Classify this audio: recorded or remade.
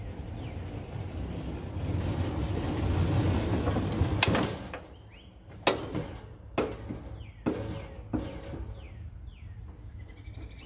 recorded